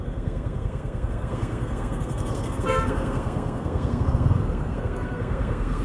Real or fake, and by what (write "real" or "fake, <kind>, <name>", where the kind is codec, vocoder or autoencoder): fake, codec, SNAC